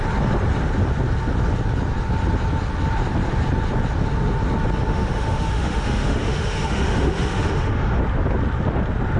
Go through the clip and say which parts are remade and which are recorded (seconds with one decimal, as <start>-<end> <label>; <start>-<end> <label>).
0.0-4.9 recorded; 4.9-8.0 remade; 8.0-9.2 recorded